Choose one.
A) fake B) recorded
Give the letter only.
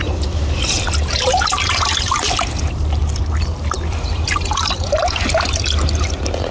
B